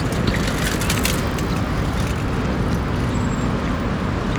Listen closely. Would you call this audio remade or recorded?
recorded